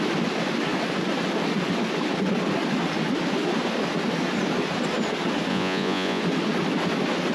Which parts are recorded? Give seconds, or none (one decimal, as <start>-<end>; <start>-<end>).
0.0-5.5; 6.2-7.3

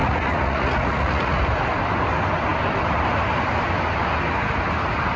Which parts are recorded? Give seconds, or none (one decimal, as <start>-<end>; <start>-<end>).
1.4-5.2

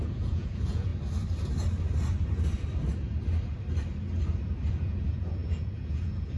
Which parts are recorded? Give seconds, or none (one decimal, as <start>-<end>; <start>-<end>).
0.9-4.7